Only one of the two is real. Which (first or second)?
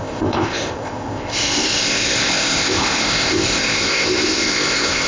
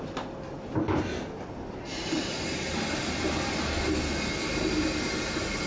second